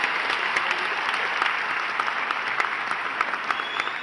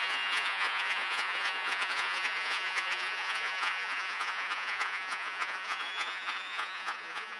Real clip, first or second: first